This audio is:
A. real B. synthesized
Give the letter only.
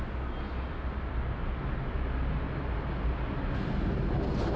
A